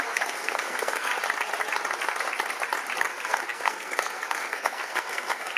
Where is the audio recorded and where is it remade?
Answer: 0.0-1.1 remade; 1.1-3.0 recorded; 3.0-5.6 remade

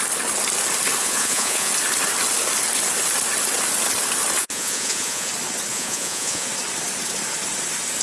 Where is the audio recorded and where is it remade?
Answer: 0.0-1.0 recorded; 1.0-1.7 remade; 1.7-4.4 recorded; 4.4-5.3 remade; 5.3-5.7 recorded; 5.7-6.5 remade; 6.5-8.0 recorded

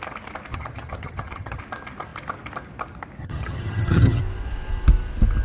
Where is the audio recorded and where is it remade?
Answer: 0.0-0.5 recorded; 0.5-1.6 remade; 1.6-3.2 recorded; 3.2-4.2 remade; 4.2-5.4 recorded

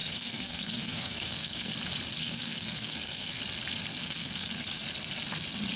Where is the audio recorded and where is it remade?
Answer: 0.0-1.7 remade; 1.7-2.2 recorded; 2.2-3.4 remade; 3.4-4.0 recorded; 4.0-4.5 remade; 4.5-5.8 recorded